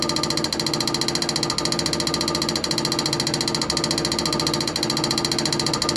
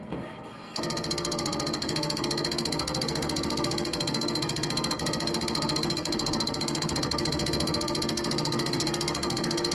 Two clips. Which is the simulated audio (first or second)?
second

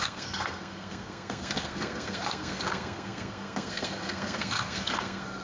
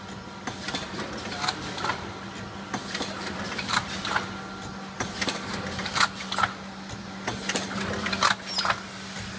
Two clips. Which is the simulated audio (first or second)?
first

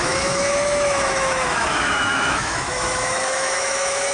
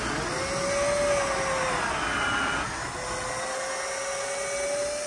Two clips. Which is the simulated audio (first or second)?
first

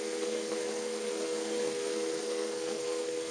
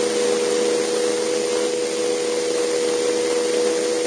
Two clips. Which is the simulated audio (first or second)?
first